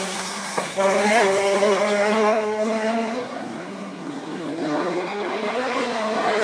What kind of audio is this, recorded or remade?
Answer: remade